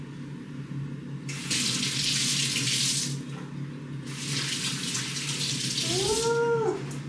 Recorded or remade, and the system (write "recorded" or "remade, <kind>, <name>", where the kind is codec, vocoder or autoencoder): recorded